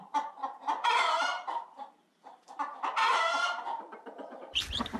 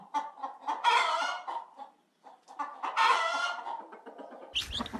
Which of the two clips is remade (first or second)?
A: first